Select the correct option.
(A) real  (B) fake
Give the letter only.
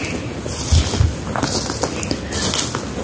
A